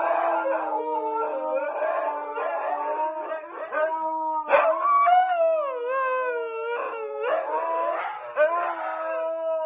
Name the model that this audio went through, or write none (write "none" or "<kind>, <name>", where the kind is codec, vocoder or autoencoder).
none